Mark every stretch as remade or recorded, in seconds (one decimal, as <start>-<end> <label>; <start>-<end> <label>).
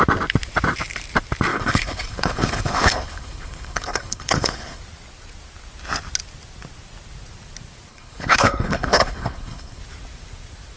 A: 0.0-1.5 recorded; 1.5-4.8 remade; 4.8-7.9 recorded; 7.9-9.8 remade; 9.8-10.8 recorded